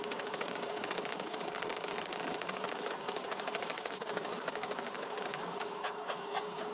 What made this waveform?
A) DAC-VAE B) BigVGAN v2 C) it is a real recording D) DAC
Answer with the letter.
D